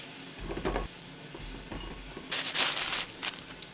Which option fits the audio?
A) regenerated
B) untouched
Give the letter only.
B